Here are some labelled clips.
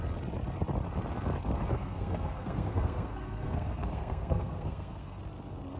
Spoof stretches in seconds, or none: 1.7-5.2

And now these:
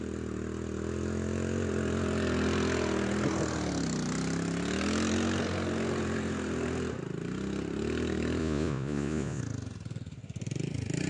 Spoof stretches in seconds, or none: 8.4-9.4

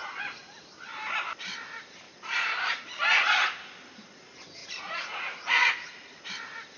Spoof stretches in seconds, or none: 4.6-6.3